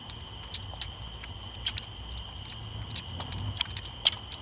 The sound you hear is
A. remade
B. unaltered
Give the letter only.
B